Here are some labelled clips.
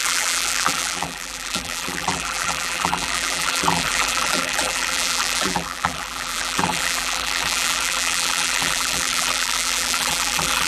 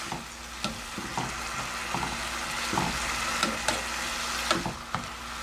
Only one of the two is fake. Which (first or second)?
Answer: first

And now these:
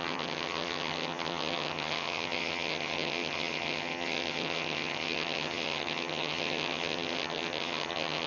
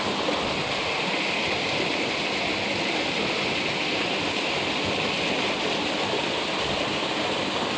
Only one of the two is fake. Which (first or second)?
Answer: first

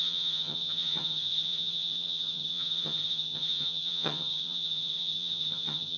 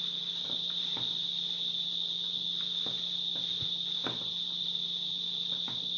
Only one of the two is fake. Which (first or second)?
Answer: first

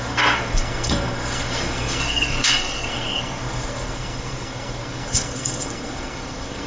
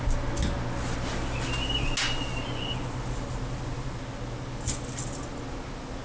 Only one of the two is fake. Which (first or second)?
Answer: first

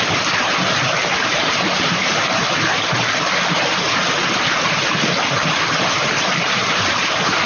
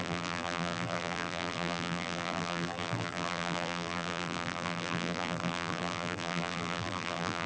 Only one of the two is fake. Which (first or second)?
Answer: second